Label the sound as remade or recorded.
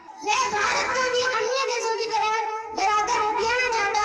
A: remade